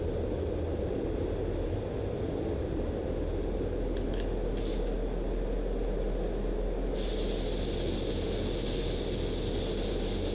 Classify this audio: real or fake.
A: real